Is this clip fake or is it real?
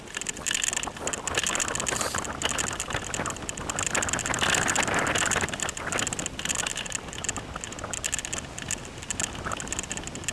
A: real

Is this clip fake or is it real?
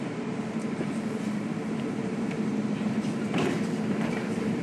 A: fake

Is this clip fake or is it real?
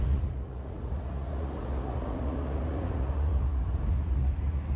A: fake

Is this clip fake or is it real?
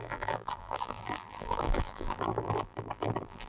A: fake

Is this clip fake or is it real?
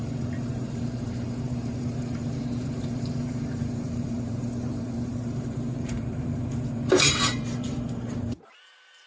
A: fake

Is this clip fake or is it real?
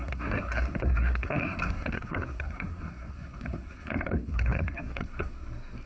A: fake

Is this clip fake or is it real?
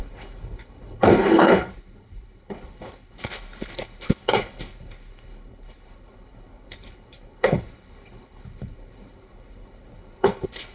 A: fake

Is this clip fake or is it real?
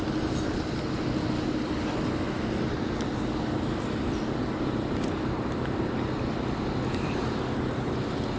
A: real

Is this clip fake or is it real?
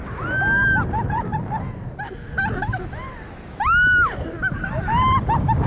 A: real